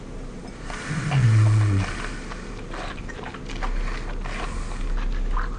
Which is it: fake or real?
real